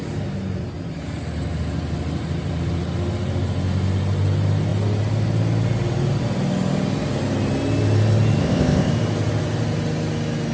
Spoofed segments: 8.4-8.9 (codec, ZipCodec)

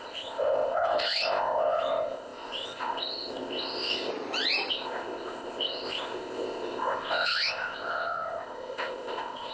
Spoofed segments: 0.0-4.1 (codec, ZipCodec); 4.7-9.5

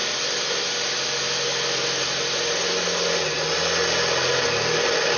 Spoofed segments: none

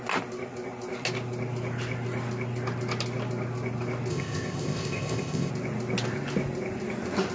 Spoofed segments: 4.1-5.5 (codec, ZipCodec)